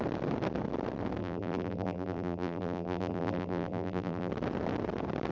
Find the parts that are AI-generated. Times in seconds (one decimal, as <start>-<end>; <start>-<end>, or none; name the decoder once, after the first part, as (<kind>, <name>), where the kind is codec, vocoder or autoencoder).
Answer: 1.2-4.3 (vocoder, BigVGAN v2)